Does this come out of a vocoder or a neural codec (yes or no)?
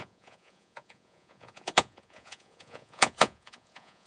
yes